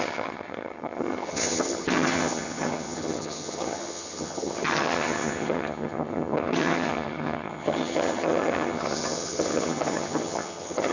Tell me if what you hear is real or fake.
fake